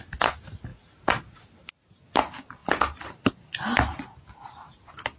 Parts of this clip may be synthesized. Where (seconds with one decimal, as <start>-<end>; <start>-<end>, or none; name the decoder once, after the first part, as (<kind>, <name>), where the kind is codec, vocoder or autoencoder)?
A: none